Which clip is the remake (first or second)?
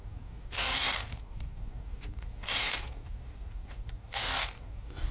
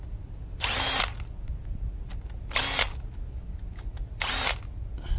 first